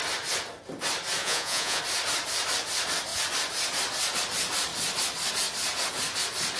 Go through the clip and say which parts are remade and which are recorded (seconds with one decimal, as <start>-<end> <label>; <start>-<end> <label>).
0.0-1.2 recorded; 1.2-1.8 remade; 1.8-6.6 recorded